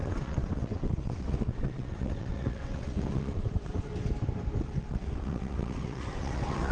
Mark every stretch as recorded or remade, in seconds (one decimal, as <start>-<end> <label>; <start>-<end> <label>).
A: 0.0-3.9 remade; 3.9-4.6 recorded; 4.6-6.7 remade